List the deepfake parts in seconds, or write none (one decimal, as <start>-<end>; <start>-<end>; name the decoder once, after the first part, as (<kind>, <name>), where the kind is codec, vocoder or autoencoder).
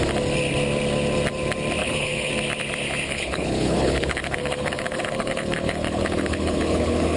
1.8-2.3 (codec, HILCodec); 3.1-7.2